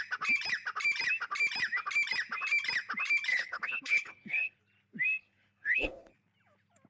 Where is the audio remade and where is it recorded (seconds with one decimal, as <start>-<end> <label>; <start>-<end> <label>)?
0.0-3.3 recorded; 3.3-4.6 remade; 4.6-5.2 recorded; 5.2-6.1 remade; 6.1-6.9 recorded